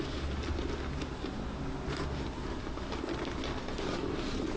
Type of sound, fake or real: real